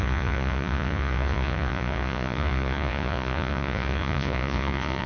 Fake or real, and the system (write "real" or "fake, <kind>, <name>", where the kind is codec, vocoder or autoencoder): fake, vocoder, Vocos